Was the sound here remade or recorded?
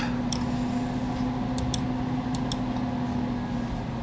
recorded